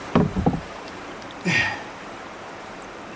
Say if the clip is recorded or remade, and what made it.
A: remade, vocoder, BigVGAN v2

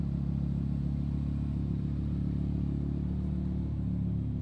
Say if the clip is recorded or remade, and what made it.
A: remade, vocoder, BigVGAN v2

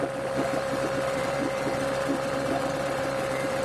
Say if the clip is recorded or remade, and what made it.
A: recorded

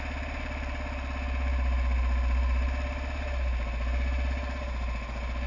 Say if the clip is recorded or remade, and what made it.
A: recorded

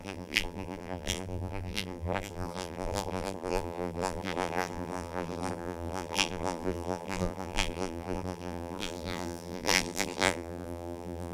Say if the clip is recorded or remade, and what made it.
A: remade, vocoder, BigVGAN v2